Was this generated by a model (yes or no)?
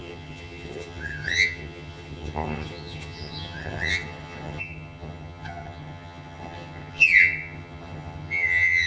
yes